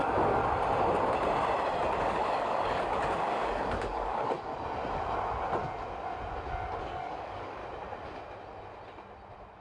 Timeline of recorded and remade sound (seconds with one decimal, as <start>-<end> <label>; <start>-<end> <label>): 0.0-0.4 remade; 0.4-2.0 recorded; 2.0-4.5 remade; 4.5-6.8 recorded; 6.8-7.6 remade; 7.6-9.6 recorded